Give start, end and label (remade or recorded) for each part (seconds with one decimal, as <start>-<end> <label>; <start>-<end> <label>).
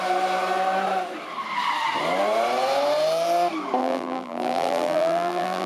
0.0-3.8 recorded; 3.8-5.7 remade